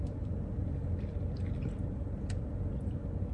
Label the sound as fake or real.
real